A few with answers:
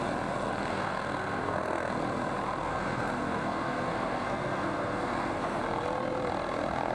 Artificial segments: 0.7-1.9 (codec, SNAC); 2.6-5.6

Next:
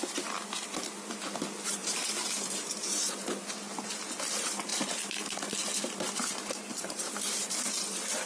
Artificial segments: 1.8-3.4 (vocoder, BigVGAN v2); 4.7-5.3; 6.7-8.3

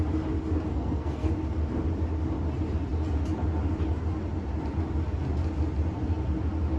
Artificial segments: 0.7-1.3 (codec, SNAC)

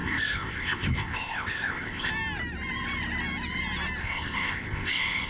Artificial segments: 0.0-2.1 (codec, ZipCodec); 4.0-5.3